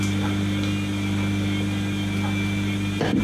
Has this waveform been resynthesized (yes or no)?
no